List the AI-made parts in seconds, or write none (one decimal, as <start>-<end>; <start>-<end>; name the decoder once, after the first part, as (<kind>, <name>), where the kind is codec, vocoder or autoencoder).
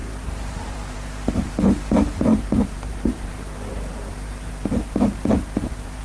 0.0-1.5 (vocoder, BigVGAN v2); 2.3-6.0